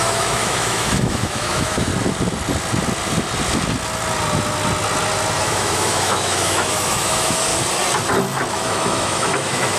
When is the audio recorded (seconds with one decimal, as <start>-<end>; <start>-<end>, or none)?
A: 1.9-5.4; 7.5-8.5

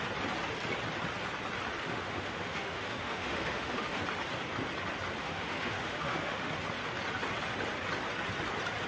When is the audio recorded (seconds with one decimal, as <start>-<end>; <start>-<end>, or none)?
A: 0.0-1.8; 4.0-5.2; 6.5-8.9